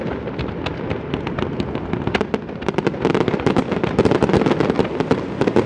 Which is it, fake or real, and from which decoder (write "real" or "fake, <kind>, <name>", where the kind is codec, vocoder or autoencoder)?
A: real